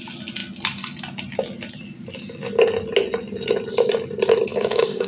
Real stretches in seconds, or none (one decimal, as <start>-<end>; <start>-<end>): 0.0-4.5